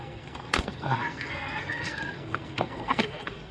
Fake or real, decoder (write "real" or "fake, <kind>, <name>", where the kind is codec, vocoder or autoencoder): fake, codec, SNAC